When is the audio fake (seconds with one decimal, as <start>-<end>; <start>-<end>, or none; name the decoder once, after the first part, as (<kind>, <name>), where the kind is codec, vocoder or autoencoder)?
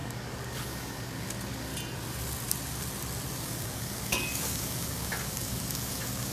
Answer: 0.0-1.7 (codec, DAC); 3.4-6.3